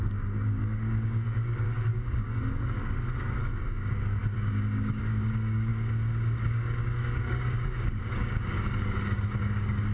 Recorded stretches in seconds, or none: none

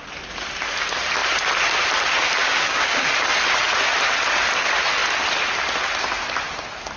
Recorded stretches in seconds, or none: 0.0-2.4; 3.1-7.0